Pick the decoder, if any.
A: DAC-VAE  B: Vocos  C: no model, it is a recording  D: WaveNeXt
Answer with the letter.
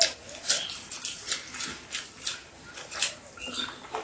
C